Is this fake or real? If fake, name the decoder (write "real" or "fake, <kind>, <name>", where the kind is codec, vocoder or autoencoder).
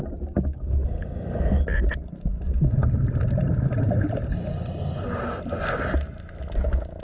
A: real